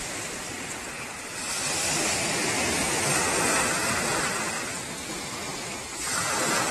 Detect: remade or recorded recorded